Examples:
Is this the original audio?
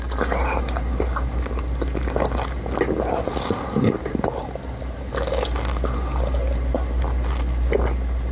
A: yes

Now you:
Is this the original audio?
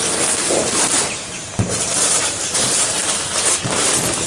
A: no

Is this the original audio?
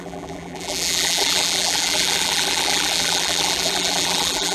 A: no